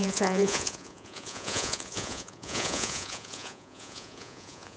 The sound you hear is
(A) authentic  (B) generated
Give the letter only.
B